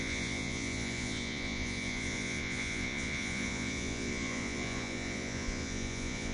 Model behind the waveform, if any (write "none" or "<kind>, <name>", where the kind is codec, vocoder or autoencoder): vocoder, Vocos